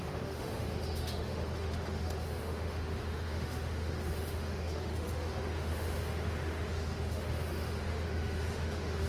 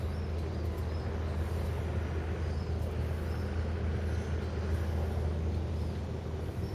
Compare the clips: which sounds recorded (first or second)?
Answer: second